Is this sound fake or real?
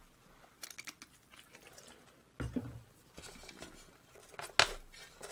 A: real